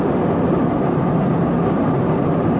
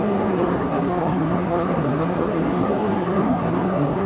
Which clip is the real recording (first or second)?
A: first